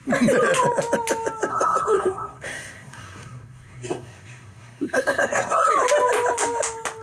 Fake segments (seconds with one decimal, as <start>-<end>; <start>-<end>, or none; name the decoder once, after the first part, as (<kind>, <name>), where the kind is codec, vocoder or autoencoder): 1.5-5.7 (codec, SNAC)